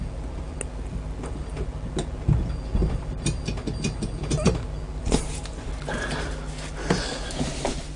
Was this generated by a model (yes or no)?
no